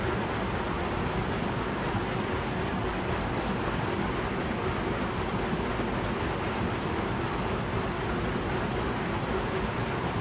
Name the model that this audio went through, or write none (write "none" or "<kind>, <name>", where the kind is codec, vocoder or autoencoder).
none